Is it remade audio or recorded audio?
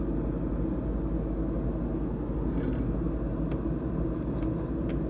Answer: recorded